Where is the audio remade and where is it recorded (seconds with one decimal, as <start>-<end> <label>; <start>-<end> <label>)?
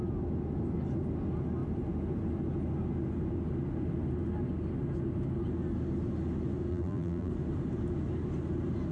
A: 0.0-6.7 recorded; 6.7-7.3 remade; 7.3-8.9 recorded